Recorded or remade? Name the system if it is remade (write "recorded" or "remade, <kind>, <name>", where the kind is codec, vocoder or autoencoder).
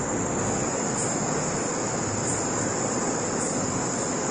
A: recorded